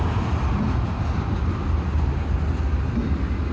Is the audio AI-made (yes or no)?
no